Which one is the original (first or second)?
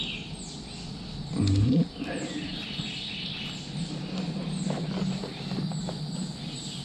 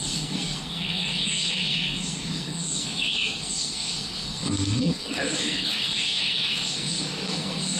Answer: first